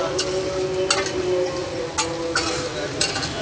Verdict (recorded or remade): recorded